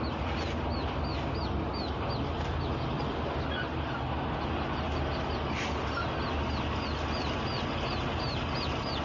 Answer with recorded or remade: recorded